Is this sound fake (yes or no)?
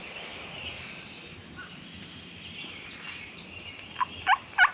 no